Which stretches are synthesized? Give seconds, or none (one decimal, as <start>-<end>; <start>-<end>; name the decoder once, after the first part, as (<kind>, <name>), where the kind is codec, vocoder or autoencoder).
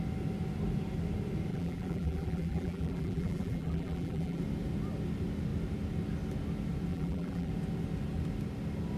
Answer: 1.5-4.4 (vocoder, BigVGAN v2); 6.9-7.5